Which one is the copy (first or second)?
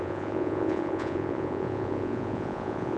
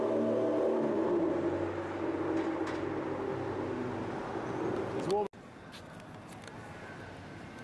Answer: first